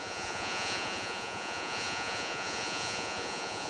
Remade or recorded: remade